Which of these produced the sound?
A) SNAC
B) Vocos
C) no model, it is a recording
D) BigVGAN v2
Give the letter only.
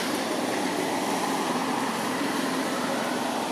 D